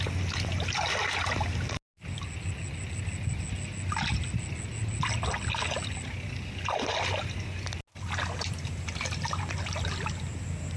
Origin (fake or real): real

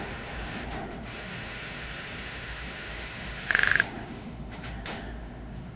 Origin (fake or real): fake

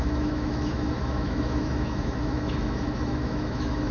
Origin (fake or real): fake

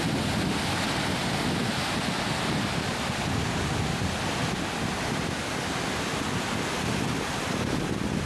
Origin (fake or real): real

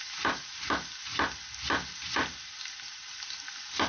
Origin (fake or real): real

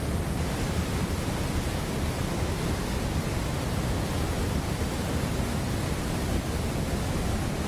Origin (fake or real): real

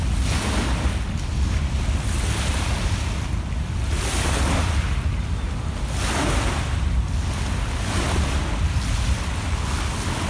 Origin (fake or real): real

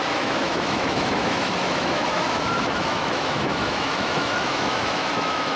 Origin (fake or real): fake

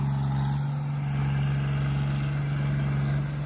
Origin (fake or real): real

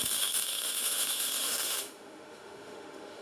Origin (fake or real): fake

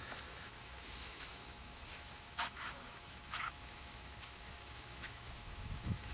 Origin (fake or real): fake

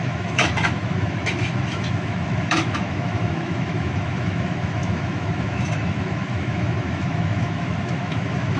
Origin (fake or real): fake